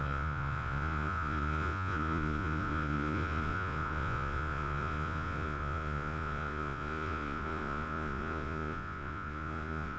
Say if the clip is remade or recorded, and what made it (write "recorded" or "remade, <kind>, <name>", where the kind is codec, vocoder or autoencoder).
remade, vocoder, Vocos